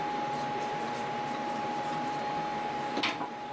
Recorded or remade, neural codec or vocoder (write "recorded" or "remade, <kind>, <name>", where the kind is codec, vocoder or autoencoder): recorded